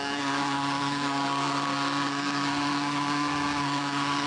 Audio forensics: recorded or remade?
remade